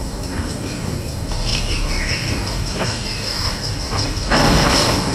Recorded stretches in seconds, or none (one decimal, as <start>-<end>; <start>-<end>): none